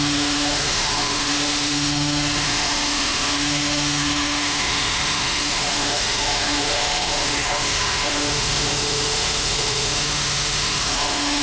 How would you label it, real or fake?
fake